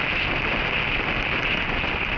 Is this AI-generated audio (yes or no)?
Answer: no